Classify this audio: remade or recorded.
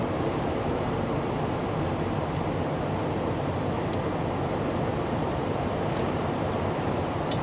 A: remade